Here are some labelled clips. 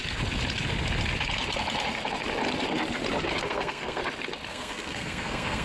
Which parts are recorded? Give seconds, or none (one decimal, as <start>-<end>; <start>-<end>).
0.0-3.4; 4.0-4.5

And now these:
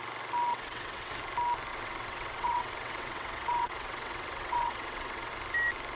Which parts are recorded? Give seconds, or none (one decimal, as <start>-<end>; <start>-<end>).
0.0-0.5; 1.1-1.7; 5.3-6.0

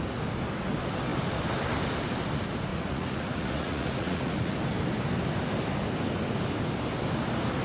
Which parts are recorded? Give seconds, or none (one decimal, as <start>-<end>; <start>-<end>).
0.0-2.7; 4.5-7.6

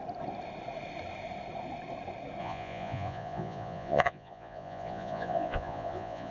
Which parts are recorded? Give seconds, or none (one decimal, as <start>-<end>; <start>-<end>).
0.0-2.4

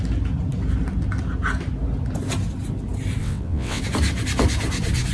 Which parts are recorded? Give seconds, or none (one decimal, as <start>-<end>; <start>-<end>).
0.0-3.2; 3.8-5.1